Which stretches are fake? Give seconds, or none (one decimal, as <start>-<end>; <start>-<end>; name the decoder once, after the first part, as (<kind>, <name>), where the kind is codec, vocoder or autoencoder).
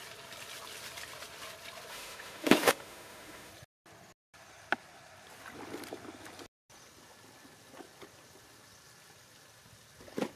1.9-3.5 (autoencoder, DAC-VAE)